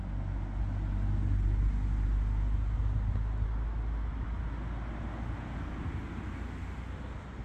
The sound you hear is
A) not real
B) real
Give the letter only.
B